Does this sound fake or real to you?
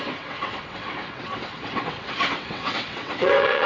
fake